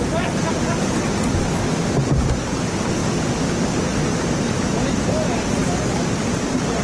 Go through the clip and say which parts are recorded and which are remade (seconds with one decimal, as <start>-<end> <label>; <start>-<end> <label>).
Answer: 0.0-6.8 recorded